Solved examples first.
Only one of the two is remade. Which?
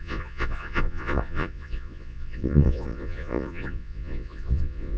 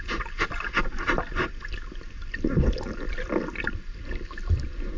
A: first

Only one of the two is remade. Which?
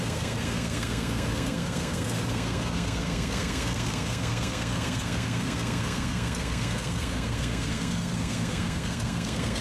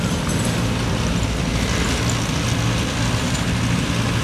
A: first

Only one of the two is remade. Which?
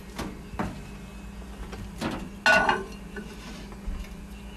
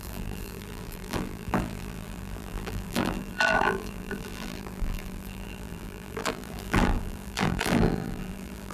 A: second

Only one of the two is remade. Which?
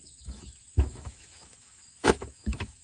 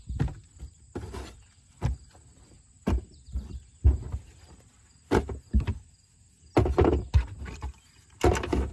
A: first